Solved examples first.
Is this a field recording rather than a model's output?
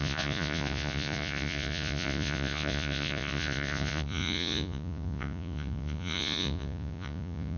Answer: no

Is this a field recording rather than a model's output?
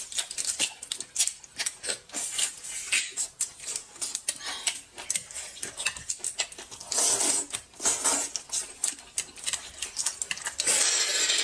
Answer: yes